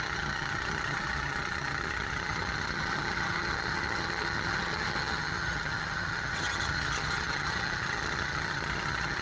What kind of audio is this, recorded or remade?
remade